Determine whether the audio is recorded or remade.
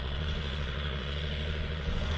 remade